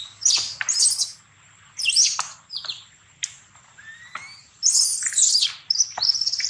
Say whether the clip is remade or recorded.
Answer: recorded